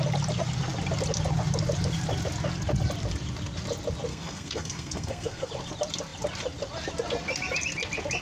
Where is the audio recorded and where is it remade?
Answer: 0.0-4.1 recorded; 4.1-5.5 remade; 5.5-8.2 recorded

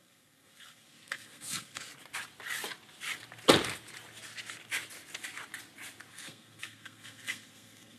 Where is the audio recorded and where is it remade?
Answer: 0.0-1.9 remade; 1.9-6.1 recorded; 6.1-8.0 remade

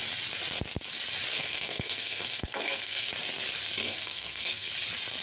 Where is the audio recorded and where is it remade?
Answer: 0.0-1.3 recorded; 1.3-3.1 remade; 3.1-3.8 recorded; 3.8-4.7 remade; 4.7-5.2 recorded

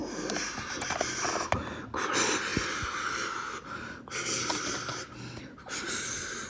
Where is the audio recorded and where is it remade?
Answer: 0.0-6.5 recorded

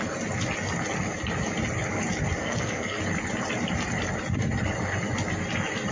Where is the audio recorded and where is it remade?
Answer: 0.0-2.4 recorded; 2.4-3.0 remade; 3.0-5.9 recorded

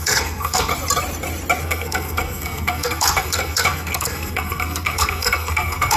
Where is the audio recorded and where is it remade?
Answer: 0.0-0.7 remade; 0.7-1.6 recorded; 1.6-6.0 remade

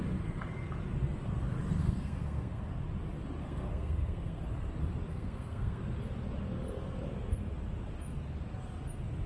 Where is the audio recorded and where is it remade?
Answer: 0.0-1.8 recorded; 1.8-2.6 remade; 2.6-3.4 recorded; 3.4-4.4 remade; 4.4-5.1 recorded; 5.1-5.8 remade; 5.8-9.3 recorded

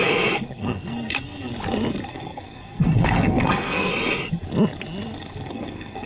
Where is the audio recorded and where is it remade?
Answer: 0.0-1.5 remade; 1.5-2.1 recorded; 2.1-3.9 remade; 3.9-5.5 recorded; 5.5-6.1 remade